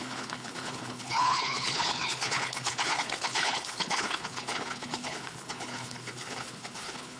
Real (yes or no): no